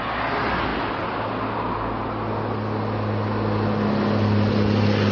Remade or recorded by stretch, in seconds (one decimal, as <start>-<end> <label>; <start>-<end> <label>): 0.0-5.1 recorded